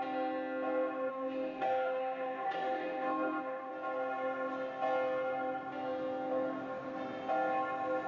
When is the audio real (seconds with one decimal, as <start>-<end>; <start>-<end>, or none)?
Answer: 0.0-1.1; 3.7-8.1